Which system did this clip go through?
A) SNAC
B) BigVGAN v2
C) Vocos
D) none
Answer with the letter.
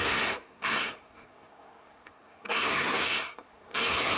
A